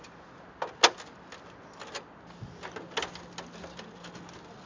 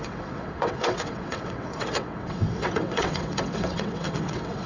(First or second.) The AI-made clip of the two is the second